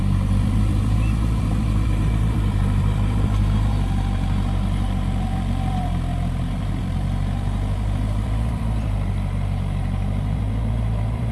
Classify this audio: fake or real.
fake